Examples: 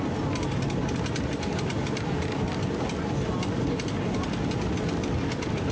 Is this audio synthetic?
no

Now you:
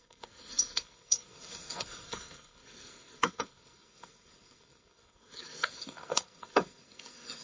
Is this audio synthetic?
yes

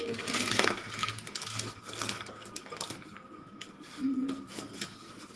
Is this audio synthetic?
yes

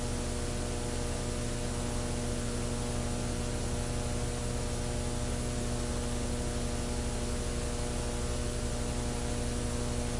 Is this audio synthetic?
no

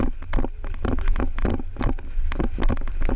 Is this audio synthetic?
no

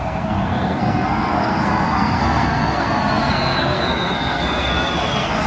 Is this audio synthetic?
yes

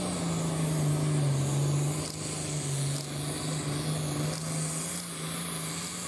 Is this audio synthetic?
no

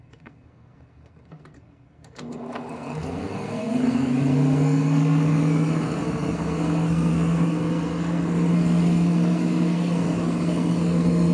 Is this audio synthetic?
yes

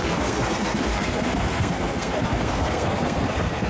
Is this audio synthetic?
yes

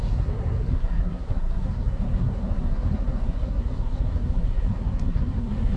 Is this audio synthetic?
yes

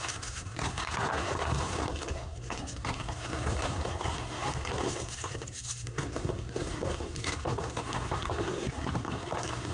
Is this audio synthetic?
yes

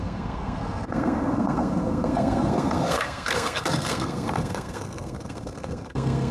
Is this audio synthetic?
yes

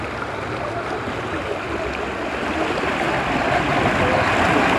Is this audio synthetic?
no